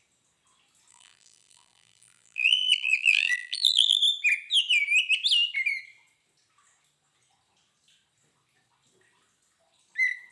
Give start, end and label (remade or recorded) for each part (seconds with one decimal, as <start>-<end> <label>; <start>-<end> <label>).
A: 0.0-0.9 recorded; 0.9-4.0 remade; 4.0-10.3 recorded